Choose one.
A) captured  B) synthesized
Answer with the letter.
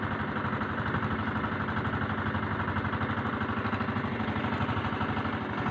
A